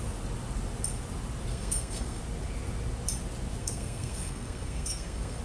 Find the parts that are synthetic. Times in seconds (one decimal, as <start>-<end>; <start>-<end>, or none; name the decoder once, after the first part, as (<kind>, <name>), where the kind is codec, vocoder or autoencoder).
1.5-2.2 (codec, SNAC); 3.6-5.4